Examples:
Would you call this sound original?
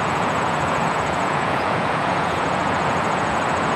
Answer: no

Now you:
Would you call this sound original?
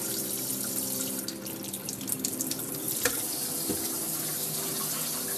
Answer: yes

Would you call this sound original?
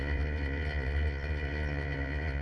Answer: no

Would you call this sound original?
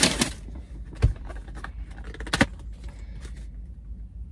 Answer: yes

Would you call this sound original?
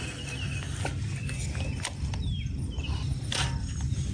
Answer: yes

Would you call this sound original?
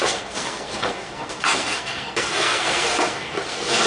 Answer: no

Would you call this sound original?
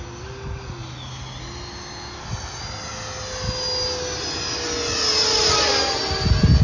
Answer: yes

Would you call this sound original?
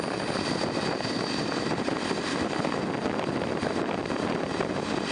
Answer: yes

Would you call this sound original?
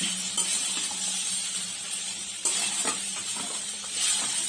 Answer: no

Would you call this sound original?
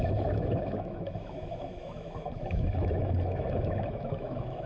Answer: no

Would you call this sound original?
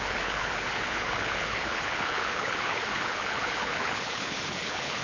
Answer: no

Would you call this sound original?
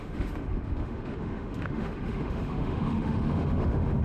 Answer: no